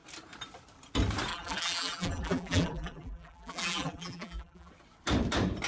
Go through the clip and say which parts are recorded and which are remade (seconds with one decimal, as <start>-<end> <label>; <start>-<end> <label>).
0.0-1.3 recorded; 1.3-4.7 remade; 4.7-5.7 recorded